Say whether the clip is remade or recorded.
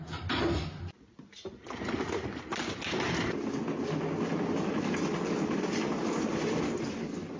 recorded